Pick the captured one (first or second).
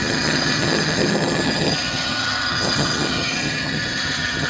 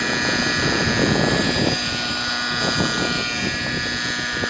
second